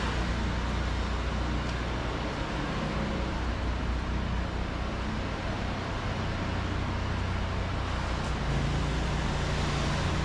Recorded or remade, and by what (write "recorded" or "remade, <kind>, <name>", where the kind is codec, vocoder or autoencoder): recorded